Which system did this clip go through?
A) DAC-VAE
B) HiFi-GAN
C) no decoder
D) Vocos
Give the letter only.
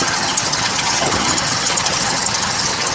B